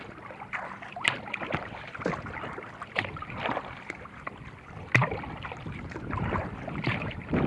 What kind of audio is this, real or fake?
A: fake